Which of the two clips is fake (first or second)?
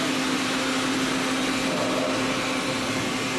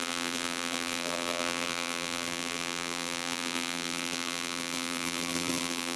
second